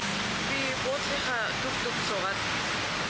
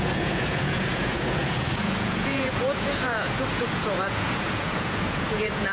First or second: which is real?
first